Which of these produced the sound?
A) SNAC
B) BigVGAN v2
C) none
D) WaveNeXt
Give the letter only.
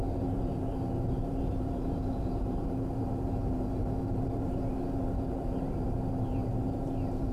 B